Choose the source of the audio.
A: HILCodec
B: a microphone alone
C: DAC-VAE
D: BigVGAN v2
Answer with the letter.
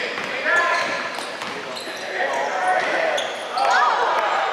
B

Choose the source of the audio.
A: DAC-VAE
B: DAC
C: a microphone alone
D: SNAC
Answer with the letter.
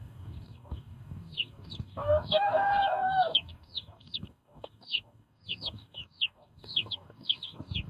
B